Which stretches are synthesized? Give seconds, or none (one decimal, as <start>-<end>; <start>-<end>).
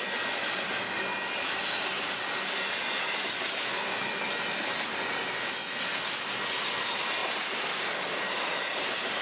none